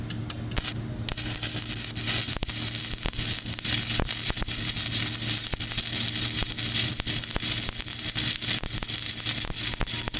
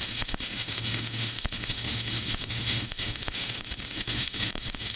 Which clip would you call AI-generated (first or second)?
second